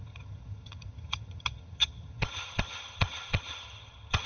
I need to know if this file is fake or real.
fake